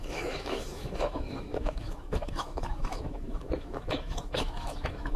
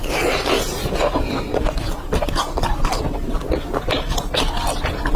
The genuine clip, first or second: second